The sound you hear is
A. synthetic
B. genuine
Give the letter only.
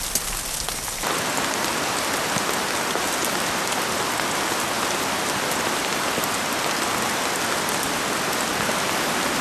B